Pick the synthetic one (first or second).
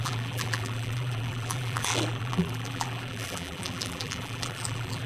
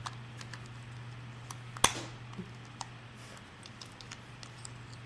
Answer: first